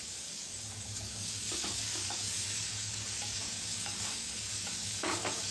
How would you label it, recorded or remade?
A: remade